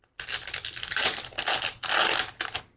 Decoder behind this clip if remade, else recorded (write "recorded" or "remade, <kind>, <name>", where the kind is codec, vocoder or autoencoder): recorded